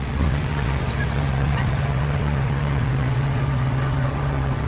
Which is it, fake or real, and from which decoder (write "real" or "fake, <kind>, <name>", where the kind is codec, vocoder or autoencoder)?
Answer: fake, vocoder, WaveNeXt